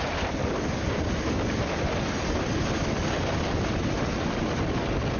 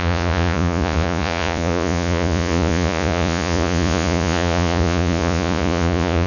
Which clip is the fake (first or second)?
second